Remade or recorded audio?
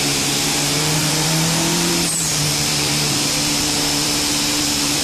remade